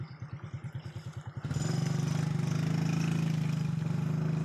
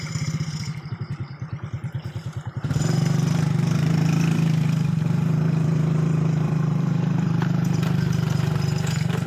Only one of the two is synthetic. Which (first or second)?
second